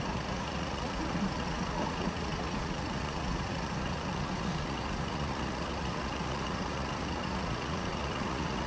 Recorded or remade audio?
remade